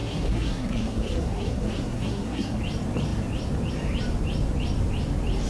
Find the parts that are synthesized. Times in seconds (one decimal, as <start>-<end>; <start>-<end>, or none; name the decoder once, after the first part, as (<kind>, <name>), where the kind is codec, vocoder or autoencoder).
0.0-2.6 (codec, SNAC)

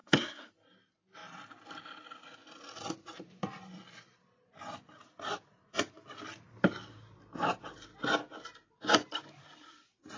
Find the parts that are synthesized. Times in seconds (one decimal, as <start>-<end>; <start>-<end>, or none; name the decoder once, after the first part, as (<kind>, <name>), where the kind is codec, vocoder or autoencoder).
0.0-0.5 (codec, SNAC)

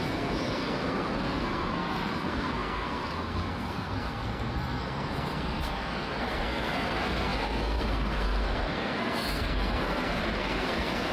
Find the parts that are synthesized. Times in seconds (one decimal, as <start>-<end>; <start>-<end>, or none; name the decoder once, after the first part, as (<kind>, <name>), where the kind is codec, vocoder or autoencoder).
0.0-11.1 (codec, SNAC)

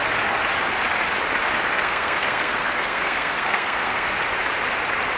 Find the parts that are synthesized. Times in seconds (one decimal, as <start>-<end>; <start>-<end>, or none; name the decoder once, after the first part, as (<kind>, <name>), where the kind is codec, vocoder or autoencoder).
1.6-4.1 (codec, SNAC)

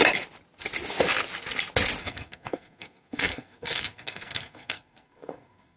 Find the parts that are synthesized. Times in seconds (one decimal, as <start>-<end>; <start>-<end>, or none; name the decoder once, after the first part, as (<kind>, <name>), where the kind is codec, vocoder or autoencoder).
2.0-5.8 (codec, SNAC)

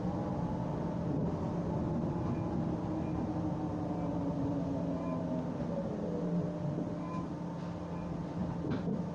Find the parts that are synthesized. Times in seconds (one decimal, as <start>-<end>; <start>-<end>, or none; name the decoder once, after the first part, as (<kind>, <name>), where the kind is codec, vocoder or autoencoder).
none